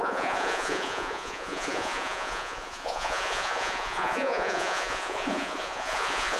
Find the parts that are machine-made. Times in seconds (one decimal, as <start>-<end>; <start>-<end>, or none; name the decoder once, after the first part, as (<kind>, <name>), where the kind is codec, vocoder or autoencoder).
0.0-6.4 (vocoder, Vocos)

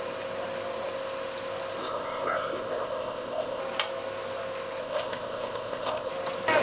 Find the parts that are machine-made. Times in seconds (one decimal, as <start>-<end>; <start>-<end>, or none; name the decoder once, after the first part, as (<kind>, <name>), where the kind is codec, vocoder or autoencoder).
1.8-3.6 (codec, ZipCodec); 4.8-6.1

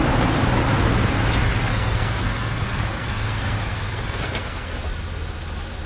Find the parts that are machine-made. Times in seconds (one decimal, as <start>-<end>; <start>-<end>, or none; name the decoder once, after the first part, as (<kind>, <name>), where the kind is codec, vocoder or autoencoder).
1.7-4.8 (codec, SNAC)

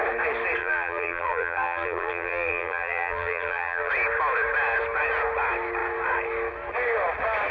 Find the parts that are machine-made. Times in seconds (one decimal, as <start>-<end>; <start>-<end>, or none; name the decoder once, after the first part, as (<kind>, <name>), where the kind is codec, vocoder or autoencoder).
0.6-3.9 (vocoder, BigVGAN v2)

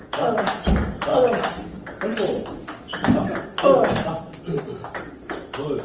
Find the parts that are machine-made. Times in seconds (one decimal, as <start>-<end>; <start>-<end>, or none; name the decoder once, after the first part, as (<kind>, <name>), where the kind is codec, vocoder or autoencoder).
0.0-0.7 (vocoder, Vocos)

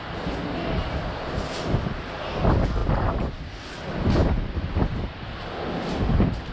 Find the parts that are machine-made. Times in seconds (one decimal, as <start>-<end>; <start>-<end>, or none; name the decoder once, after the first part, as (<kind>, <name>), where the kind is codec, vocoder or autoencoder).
none